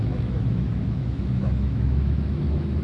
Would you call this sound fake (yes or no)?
yes